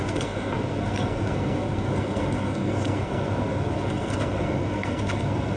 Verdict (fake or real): fake